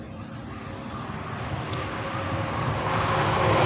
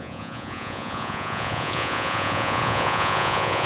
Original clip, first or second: first